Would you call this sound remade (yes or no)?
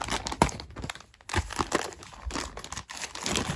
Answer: no